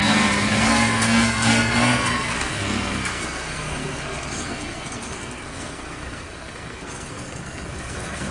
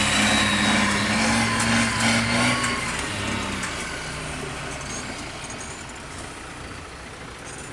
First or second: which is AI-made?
first